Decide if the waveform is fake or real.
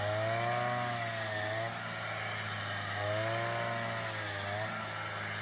real